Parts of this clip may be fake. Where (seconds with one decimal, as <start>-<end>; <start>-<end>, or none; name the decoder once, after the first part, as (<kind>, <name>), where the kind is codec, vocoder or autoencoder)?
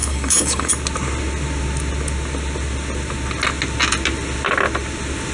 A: 0.0-0.7 (codec, DAC)